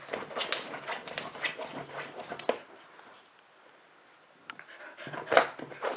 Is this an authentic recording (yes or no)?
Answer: yes